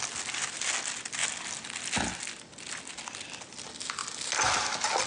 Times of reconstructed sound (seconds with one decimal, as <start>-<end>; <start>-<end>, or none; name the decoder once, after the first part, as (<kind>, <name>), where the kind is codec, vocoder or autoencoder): none